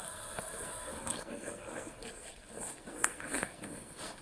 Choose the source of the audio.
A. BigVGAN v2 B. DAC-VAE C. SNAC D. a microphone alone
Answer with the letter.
C